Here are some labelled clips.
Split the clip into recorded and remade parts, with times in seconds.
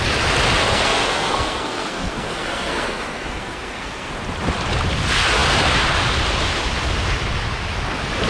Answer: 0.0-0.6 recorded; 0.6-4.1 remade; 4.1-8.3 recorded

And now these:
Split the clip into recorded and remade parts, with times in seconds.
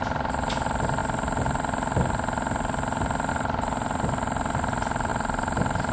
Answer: 0.0-5.9 recorded